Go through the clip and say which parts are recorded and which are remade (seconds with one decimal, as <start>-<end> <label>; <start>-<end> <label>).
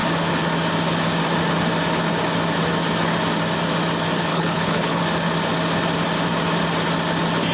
0.0-4.3 recorded; 4.3-5.0 remade; 5.0-7.5 recorded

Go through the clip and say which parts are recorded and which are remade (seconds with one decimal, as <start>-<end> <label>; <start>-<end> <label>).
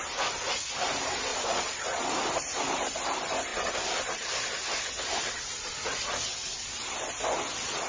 0.0-1.3 recorded; 1.3-2.0 remade; 2.0-7.9 recorded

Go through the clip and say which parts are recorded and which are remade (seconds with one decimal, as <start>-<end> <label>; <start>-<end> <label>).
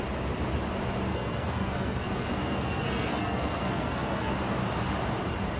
0.0-1.1 recorded; 1.1-4.3 remade; 4.3-5.6 recorded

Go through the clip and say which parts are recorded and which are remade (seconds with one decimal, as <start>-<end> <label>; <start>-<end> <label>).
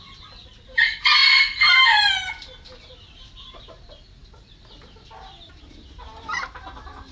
0.0-1.2 recorded; 1.2-3.6 remade; 3.6-7.1 recorded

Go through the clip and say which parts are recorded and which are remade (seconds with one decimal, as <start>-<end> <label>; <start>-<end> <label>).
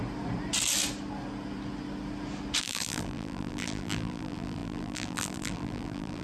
0.0-2.6 recorded; 2.6-6.2 remade